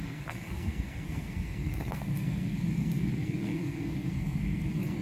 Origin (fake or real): fake